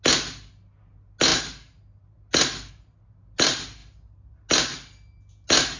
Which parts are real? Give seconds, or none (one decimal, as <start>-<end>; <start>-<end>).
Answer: 0.0-5.8